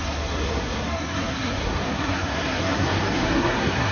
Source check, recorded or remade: remade